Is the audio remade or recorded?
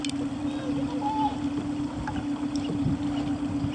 recorded